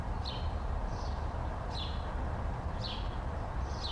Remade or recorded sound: recorded